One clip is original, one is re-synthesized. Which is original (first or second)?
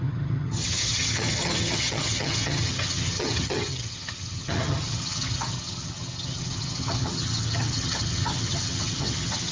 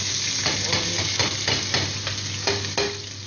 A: second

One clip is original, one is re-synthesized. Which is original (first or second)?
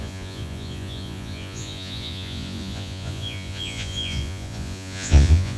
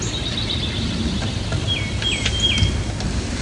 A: second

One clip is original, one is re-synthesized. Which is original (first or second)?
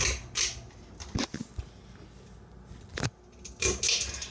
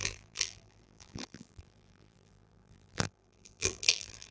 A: first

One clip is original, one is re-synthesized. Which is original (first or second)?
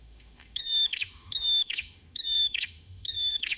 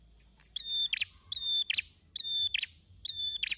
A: second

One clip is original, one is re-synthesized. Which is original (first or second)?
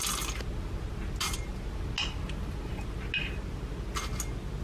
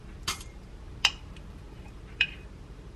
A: first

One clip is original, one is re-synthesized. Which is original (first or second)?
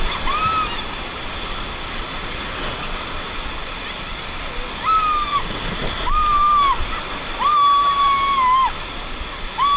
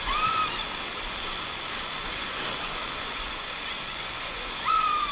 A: first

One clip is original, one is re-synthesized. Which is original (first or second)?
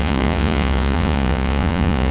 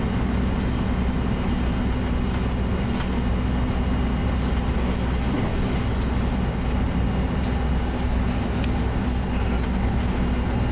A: second